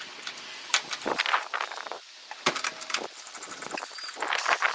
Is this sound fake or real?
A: real